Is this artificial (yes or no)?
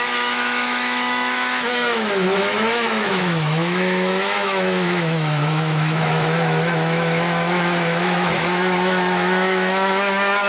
yes